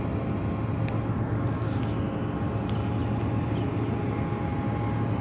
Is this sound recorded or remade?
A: recorded